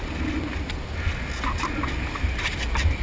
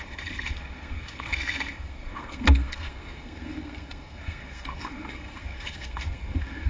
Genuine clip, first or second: first